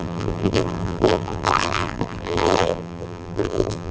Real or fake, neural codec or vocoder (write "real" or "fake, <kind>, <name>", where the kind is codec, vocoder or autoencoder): fake, vocoder, BigVGAN v2